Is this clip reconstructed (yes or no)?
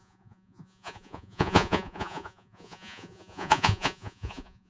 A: yes